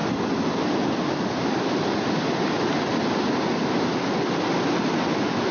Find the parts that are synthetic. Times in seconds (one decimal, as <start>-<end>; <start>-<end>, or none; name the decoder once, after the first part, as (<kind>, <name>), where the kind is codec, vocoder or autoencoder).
none